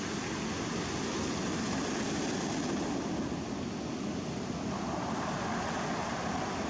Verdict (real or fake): real